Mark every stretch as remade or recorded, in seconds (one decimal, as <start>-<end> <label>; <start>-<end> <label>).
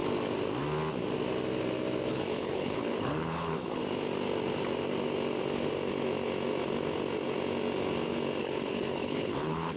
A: 0.0-2.1 recorded; 2.1-3.8 remade; 3.8-8.4 recorded; 8.4-9.8 remade